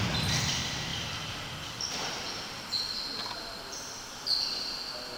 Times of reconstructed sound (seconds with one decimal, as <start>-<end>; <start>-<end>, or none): 0.9-4.0